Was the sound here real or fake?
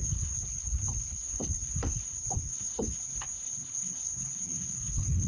fake